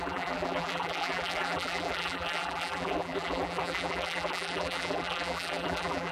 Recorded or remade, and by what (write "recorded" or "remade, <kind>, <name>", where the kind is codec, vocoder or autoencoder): remade, vocoder, BigVGAN v2